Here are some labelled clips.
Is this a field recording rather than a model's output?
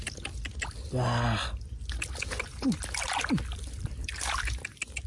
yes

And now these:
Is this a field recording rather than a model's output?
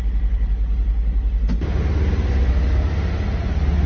yes